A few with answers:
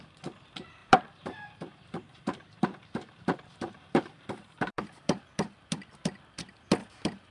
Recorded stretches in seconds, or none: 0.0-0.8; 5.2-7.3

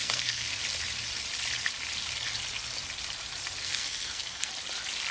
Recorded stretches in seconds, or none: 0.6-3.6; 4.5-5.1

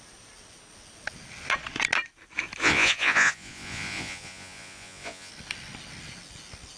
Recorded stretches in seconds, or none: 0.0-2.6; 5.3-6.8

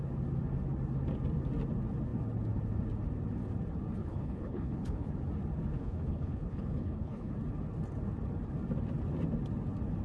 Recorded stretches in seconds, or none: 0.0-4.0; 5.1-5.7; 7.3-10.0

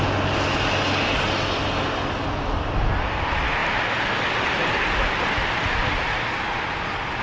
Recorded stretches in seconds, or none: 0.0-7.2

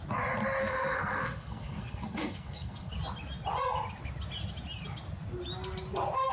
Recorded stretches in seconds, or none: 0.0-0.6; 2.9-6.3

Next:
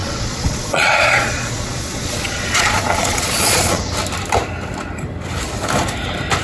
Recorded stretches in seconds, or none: 3.8-6.4